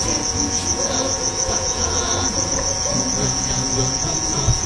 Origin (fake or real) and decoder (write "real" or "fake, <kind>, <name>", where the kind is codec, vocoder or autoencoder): fake, vocoder, Vocos